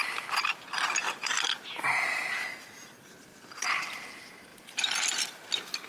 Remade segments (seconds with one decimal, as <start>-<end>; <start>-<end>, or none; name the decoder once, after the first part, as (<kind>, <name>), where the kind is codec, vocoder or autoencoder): 1.0-1.6 (vocoder, BigVGAN v2); 3.3-3.8; 4.5-5.3